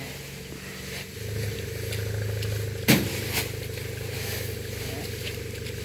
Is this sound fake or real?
real